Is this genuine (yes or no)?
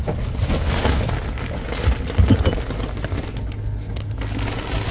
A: yes